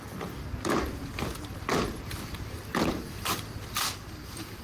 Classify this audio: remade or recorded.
recorded